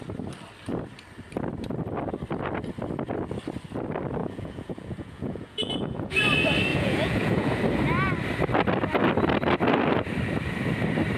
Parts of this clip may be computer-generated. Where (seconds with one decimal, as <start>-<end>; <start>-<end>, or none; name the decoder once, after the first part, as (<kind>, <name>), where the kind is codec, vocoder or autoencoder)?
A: 4.2-6.2 (vocoder, Vocos); 6.7-7.6